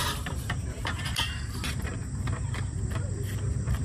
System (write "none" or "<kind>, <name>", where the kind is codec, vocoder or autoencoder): vocoder, BigVGAN v2